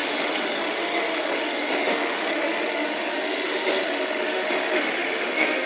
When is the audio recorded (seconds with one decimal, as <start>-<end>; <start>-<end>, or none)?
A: none